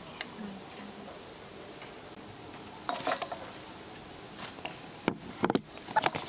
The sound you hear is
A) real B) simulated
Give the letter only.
A